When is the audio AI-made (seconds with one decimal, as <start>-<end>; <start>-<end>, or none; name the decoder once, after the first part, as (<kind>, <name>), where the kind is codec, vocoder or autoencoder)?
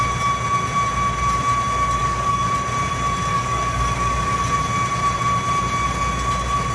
2.0-2.5 (codec, DAC); 3.3-4.5